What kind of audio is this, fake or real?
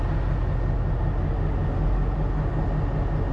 real